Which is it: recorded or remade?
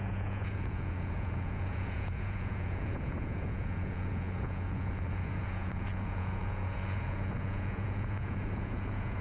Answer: remade